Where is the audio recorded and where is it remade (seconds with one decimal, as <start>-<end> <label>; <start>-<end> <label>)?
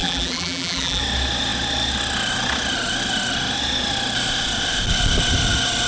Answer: 0.0-1.0 remade; 1.0-5.9 recorded